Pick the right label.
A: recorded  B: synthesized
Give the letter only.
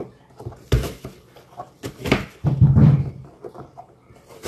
A